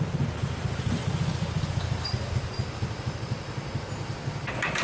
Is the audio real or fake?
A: real